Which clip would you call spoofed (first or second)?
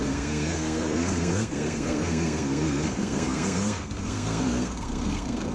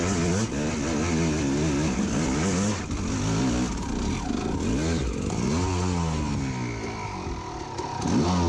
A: first